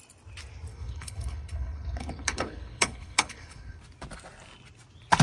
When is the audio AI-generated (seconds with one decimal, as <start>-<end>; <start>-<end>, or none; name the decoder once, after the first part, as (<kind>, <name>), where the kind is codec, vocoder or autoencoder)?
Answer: 0.7-3.8 (codec, HILCodec)